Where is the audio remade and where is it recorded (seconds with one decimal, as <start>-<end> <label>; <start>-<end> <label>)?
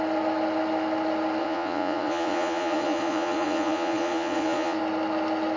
0.0-1.4 recorded; 1.4-4.8 remade; 4.8-5.6 recorded